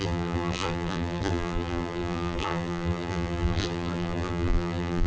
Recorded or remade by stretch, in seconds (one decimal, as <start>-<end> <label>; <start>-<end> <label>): 0.0-5.1 remade